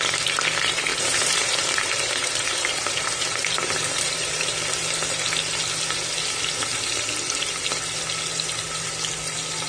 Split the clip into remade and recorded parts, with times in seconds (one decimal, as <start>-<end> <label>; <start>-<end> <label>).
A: 0.0-0.9 recorded; 0.9-4.5 remade; 4.5-9.7 recorded